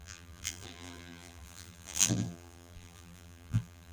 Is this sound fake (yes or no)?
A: yes